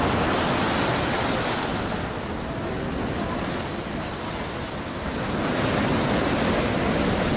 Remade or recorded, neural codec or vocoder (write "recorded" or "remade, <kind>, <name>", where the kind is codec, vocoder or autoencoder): recorded